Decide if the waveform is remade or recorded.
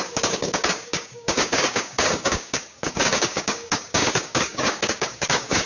remade